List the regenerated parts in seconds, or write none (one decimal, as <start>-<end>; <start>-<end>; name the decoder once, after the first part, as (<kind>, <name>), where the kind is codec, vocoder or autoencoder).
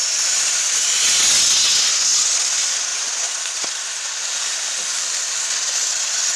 2.9-5.4 (vocoder, BigVGAN v2)